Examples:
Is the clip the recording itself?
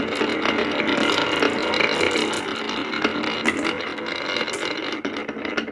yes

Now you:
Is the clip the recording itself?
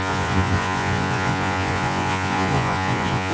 no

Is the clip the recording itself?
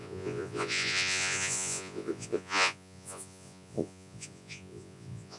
no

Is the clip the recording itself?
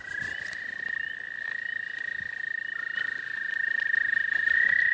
yes